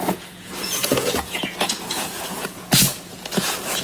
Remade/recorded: remade